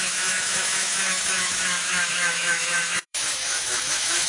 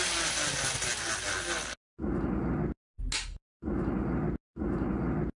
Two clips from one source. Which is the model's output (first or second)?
first